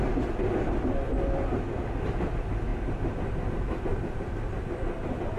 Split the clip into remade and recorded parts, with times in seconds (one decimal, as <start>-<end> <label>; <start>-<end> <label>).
0.0-5.4 recorded